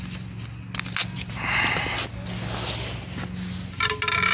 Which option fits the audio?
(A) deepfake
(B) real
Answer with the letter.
B